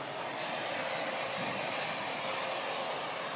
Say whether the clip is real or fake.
real